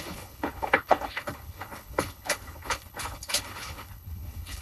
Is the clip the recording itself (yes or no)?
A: no